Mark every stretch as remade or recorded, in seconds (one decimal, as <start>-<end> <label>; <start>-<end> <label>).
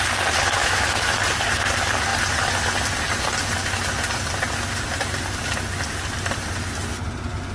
0.0-0.6 recorded; 0.6-1.2 remade; 1.2-7.5 recorded